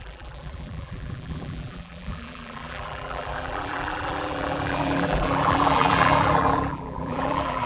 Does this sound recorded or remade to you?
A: remade